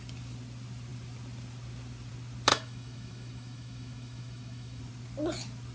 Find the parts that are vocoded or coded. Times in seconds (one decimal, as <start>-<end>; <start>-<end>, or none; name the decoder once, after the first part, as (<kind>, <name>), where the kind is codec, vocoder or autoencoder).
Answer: 2.5-4.8 (autoencoder, DAC-VAE)